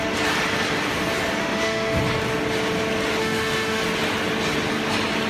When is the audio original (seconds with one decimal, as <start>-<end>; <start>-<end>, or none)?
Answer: 0.0-1.4; 2.0-3.2; 3.8-5.3